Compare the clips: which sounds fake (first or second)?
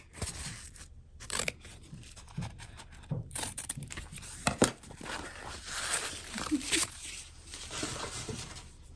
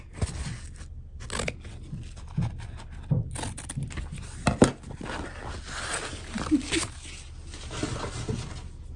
first